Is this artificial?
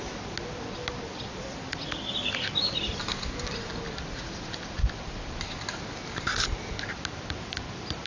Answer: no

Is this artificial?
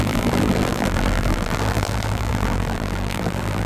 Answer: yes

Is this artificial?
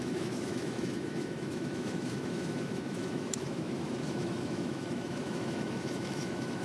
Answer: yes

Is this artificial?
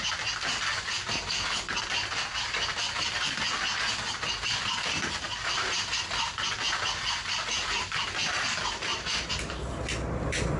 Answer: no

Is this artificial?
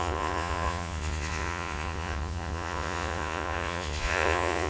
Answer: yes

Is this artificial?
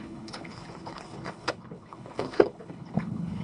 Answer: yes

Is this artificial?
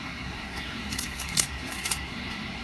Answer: yes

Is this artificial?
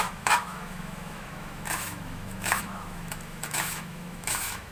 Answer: yes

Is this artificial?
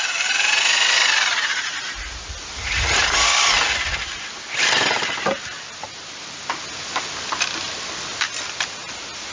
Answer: no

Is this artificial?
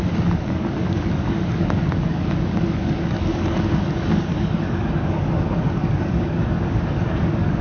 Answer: yes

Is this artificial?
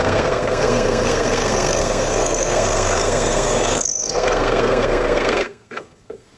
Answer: yes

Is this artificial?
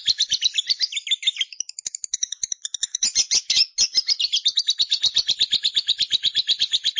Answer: no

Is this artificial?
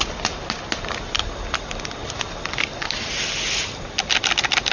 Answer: no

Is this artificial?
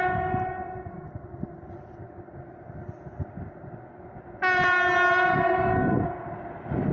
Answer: no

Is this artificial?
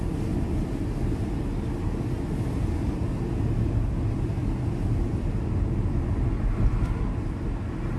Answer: no